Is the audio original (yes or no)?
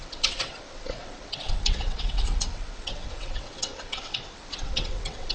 no